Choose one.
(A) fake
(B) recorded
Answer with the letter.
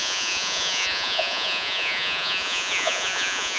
A